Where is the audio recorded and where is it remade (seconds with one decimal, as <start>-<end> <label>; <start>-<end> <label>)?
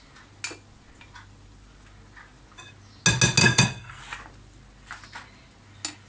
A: 0.0-3.4 recorded; 3.4-4.0 remade; 4.0-6.1 recorded